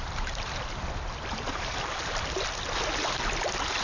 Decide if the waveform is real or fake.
real